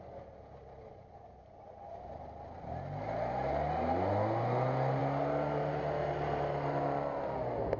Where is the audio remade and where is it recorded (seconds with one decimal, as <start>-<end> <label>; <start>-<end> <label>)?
0.0-7.8 recorded